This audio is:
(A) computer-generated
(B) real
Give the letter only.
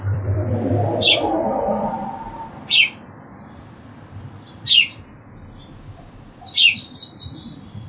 A